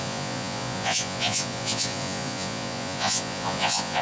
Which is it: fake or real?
fake